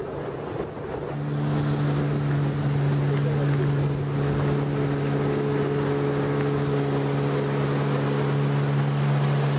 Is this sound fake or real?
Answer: real